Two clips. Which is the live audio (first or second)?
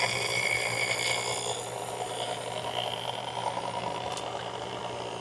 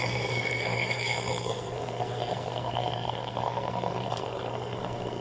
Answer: first